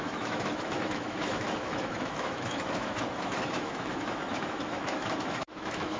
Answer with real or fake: fake